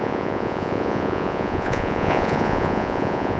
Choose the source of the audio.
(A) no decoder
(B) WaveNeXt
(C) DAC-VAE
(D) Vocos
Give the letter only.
D